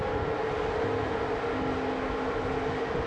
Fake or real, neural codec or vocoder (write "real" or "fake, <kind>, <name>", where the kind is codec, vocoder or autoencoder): real